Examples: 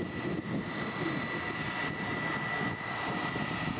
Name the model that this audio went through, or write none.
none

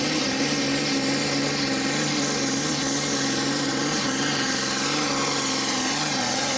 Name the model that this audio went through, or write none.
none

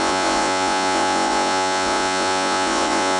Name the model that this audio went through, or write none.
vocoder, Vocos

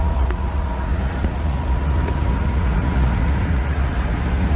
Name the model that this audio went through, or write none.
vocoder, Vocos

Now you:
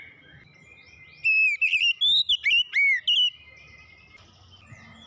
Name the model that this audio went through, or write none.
none